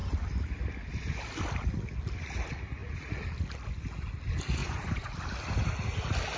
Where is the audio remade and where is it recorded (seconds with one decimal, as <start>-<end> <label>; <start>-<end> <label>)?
0.0-4.6 recorded; 4.6-5.1 remade; 5.1-6.4 recorded

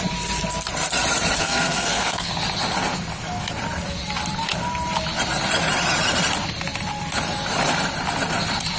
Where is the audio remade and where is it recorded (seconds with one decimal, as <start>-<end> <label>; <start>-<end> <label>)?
0.0-1.4 recorded; 1.4-2.3 remade; 2.3-8.8 recorded

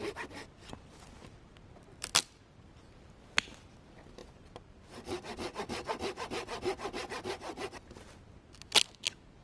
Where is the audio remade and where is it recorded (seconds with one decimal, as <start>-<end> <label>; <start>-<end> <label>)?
0.0-9.4 recorded

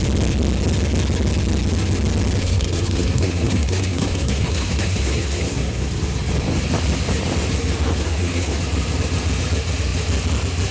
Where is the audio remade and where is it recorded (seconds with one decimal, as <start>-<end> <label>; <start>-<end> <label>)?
0.0-2.4 recorded; 2.4-5.9 remade; 5.9-8.0 recorded; 8.0-8.6 remade; 8.6-10.7 recorded

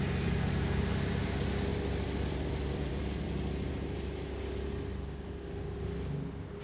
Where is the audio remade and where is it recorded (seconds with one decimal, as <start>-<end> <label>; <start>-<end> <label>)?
0.0-1.7 recorded; 1.7-3.7 remade; 3.7-6.6 recorded